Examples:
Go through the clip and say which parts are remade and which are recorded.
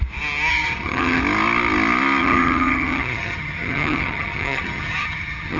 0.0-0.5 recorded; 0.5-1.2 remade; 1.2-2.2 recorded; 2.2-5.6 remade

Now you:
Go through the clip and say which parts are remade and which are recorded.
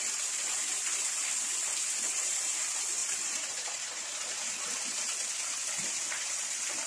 0.0-3.0 recorded; 3.0-4.5 remade; 4.5-6.9 recorded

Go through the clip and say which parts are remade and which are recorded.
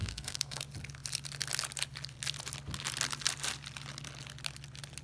0.0-0.6 remade; 0.6-5.0 recorded